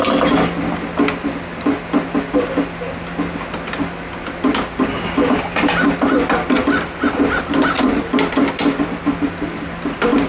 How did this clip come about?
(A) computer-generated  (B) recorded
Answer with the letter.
B